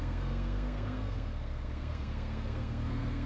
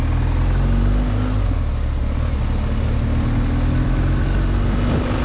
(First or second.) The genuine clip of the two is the second